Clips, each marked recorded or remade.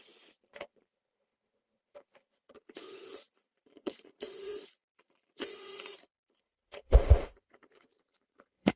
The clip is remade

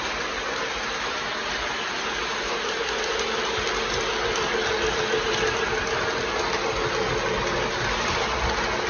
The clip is recorded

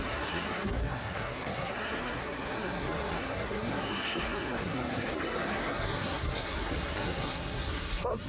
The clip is remade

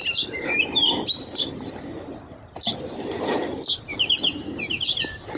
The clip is recorded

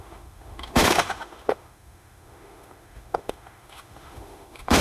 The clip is remade